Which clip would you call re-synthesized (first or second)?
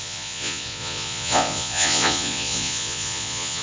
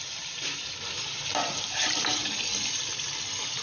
first